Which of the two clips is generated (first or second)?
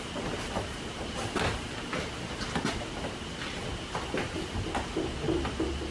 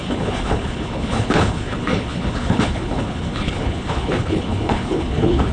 second